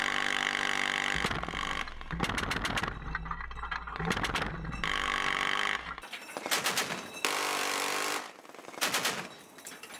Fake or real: real